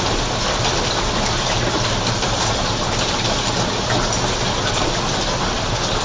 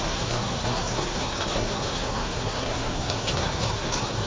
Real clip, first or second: first